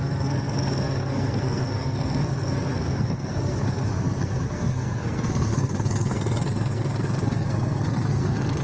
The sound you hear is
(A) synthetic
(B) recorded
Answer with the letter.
A